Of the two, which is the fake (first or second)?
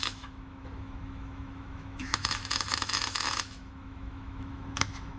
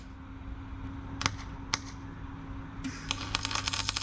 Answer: first